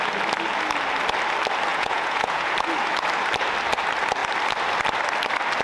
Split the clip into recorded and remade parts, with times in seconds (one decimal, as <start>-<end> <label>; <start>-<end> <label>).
0.0-1.7 recorded; 1.7-2.5 remade; 2.5-5.6 recorded